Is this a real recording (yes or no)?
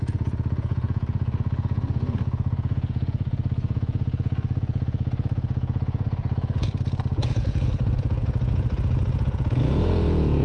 no